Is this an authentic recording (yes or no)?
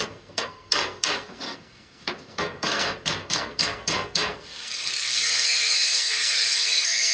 no